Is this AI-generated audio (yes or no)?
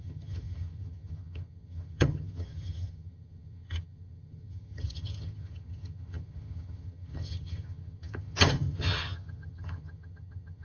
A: yes